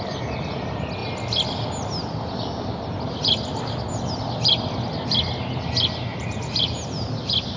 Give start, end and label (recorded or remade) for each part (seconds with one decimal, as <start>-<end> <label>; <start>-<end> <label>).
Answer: 0.0-7.6 recorded